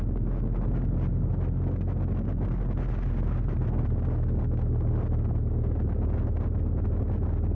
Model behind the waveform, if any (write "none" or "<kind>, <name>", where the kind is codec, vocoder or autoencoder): none